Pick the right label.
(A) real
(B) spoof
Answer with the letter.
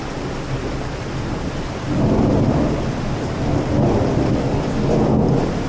A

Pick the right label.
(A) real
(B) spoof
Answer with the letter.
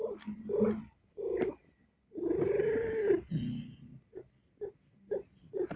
A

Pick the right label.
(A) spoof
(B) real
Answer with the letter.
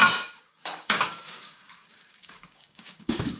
A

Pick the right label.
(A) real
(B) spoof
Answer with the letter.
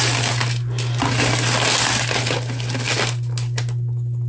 A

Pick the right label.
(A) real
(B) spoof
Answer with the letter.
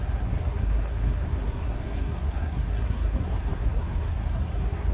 B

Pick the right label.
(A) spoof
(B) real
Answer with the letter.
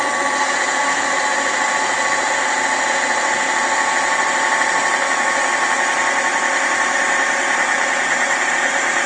B